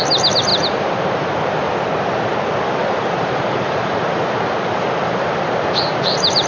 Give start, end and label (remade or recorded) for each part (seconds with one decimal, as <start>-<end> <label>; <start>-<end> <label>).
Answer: 0.0-0.5 recorded; 0.5-1.3 remade; 1.3-2.8 recorded; 2.8-6.5 remade